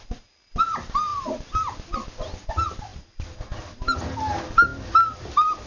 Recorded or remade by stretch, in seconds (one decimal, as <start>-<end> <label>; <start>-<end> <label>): 0.0-5.7 recorded